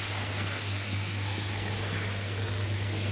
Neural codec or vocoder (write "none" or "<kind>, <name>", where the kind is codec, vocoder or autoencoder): codec, SNAC